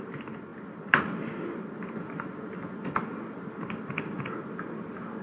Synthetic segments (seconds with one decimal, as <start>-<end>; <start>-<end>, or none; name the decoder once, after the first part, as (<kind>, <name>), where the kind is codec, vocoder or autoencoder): none